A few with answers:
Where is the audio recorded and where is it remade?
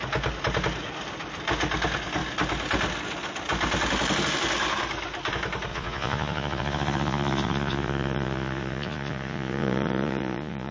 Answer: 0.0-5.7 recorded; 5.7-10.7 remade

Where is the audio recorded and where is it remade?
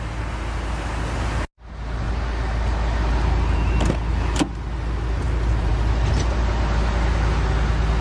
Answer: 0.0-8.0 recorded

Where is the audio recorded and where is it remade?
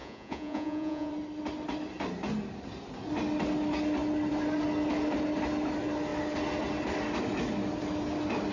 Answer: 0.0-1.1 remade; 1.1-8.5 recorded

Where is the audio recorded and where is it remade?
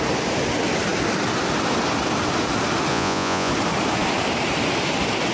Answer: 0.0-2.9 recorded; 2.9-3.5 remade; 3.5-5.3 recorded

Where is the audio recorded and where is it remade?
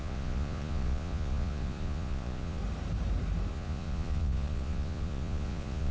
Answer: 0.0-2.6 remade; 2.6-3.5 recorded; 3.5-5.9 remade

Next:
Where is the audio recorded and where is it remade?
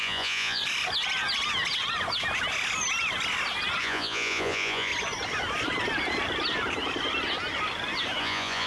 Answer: 0.0-0.6 remade; 0.6-3.8 recorded; 3.8-4.9 remade; 4.9-8.2 recorded; 8.2-8.7 remade